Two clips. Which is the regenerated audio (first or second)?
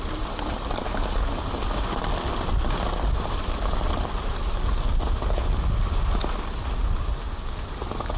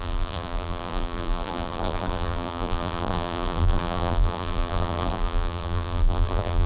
second